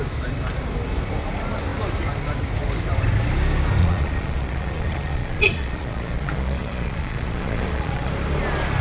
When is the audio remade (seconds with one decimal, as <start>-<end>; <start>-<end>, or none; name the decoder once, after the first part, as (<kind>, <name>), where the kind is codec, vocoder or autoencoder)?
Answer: 3.8-8.1 (vocoder, Vocos)